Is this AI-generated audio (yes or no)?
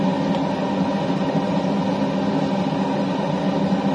no